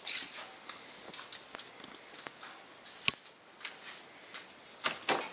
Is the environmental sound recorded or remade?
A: recorded